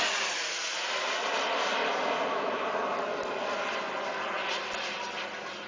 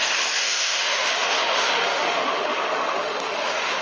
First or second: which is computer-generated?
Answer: second